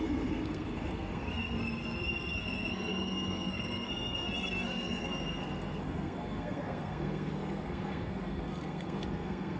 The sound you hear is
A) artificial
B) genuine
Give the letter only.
A